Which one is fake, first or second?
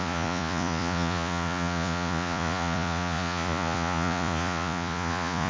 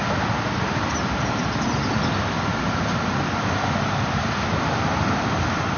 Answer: first